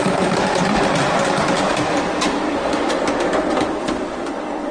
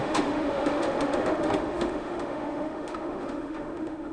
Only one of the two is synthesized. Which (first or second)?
second